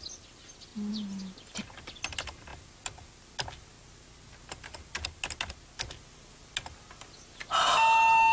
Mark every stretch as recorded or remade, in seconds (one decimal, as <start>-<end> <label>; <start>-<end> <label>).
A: 0.0-8.3 recorded